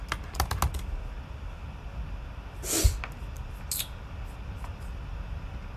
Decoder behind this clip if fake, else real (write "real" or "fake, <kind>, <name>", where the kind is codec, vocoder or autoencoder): real